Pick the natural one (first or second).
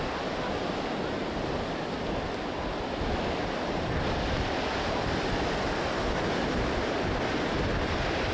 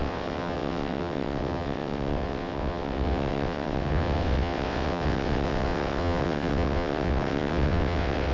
first